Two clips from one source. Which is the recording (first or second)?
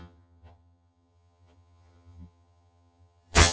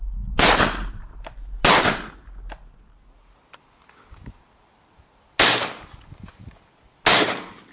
second